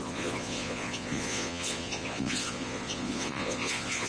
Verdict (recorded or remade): remade